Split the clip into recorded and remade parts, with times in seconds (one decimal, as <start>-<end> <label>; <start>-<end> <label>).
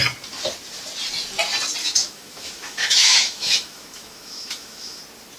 0.0-1.8 recorded; 1.8-5.0 remade; 5.0-5.4 recorded